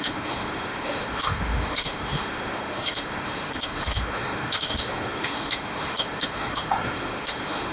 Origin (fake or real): fake